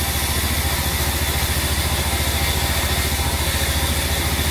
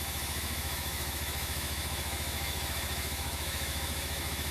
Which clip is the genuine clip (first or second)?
first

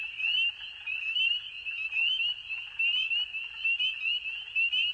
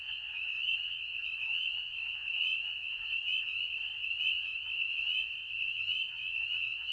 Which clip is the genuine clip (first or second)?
first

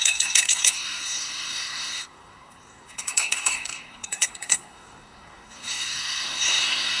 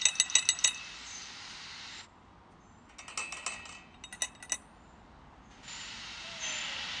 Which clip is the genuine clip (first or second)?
second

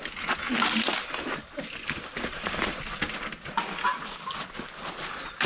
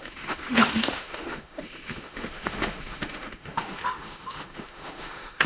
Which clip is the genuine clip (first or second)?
first